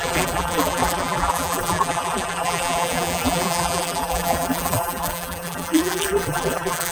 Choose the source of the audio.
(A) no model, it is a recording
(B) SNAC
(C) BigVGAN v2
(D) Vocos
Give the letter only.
C